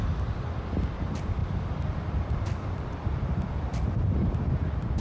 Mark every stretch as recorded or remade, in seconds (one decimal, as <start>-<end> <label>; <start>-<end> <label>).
0.0-1.4 recorded; 1.4-4.3 remade; 4.3-5.0 recorded